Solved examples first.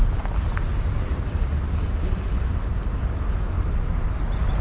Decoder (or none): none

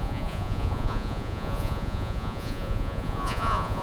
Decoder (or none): vocoder, Vocos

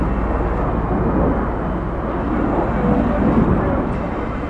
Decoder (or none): none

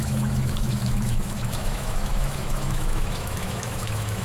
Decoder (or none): autoencoder, DAC-VAE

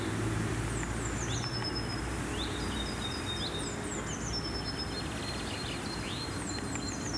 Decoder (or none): none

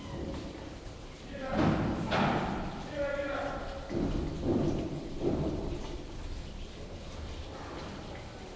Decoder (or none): none